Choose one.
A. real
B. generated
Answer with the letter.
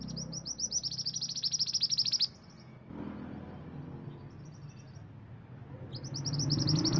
A